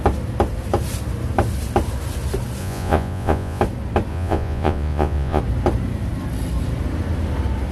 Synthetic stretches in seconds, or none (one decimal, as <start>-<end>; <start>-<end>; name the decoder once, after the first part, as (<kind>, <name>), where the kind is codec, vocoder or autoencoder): 2.6-3.6 (vocoder, Vocos); 4.1-5.4